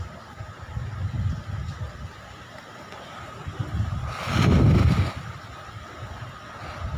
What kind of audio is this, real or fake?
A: real